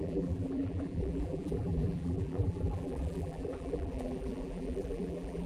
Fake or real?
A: fake